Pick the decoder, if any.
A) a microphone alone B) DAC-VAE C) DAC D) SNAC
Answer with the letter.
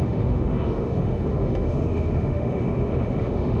B